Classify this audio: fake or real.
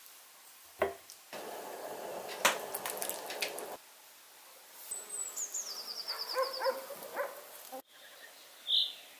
real